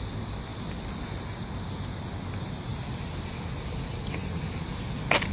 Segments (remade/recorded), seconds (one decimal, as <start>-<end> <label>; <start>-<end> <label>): 0.0-5.3 recorded